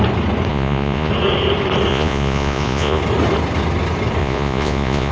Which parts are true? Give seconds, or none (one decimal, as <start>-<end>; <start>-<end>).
0.0-0.5; 1.1-1.9; 3.0-4.2